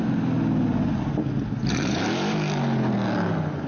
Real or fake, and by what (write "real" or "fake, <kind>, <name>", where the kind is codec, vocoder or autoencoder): real